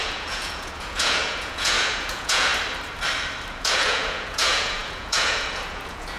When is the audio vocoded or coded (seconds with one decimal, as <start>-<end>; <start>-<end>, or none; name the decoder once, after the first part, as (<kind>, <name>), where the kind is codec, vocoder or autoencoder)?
0.0-2.5 (vocoder, Vocos); 3.5-6.2